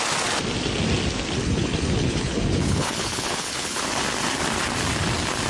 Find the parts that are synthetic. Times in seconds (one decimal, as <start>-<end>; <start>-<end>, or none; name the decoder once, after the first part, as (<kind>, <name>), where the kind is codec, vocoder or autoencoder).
1.4-3.8 (codec, HILCodec)